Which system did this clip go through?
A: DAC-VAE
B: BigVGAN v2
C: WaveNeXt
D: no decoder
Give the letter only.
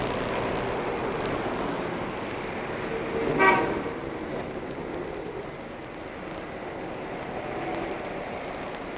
D